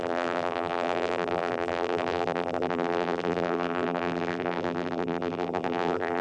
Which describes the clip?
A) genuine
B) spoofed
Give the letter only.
B